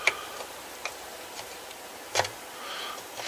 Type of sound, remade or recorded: remade